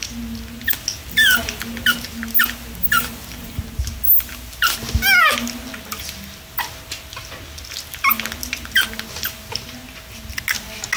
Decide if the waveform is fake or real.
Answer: real